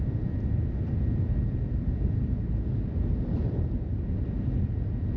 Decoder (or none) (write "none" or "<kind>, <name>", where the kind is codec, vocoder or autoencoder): none